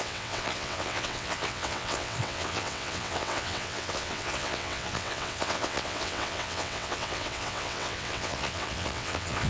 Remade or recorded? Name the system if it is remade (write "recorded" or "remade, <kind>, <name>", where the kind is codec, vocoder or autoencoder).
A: remade, vocoder, WaveNeXt